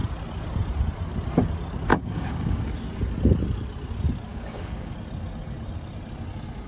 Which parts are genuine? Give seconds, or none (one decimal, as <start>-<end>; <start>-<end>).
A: 0.0-1.9; 2.7-4.3; 4.9-6.7